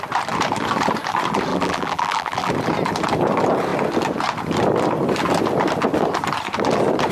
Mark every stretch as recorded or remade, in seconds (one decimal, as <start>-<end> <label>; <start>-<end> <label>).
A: 0.0-1.5 recorded; 1.5-2.5 remade; 2.5-7.1 recorded